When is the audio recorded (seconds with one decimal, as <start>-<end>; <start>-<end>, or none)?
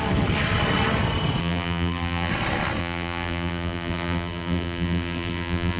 0.0-1.4; 2.3-2.8